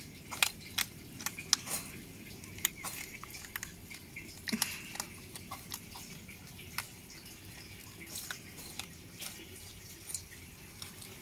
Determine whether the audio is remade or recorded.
recorded